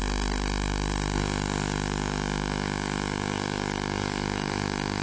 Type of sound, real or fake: fake